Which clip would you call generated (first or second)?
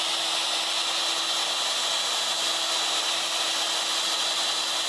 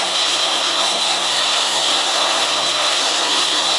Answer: second